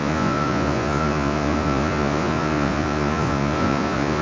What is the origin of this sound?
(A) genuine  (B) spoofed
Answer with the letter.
B